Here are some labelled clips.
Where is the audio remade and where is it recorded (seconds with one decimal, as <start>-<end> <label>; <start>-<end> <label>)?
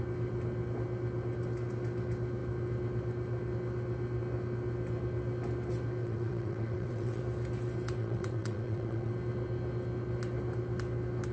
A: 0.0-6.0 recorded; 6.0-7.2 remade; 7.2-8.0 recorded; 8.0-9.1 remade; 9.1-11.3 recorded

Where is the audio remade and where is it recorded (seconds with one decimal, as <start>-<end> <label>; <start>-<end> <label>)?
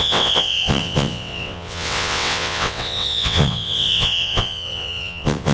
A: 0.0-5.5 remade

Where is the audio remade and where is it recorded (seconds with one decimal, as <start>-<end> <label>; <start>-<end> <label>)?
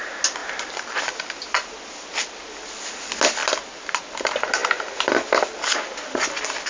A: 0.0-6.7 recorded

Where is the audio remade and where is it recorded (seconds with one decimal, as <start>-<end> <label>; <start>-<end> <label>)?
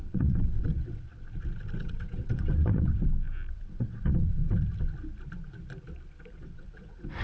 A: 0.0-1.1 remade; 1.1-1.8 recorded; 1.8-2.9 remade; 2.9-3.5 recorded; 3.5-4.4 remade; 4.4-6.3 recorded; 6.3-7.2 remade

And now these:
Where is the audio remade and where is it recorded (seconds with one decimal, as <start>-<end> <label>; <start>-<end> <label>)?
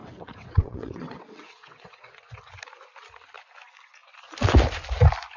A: 0.0-2.4 remade; 2.4-5.4 recorded